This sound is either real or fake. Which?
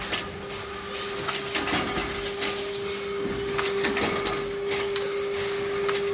real